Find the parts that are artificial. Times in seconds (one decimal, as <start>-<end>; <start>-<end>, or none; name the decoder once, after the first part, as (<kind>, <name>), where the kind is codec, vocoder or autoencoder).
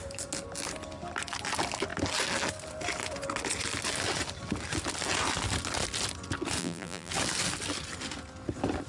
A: 6.6-7.1 (vocoder, BigVGAN v2)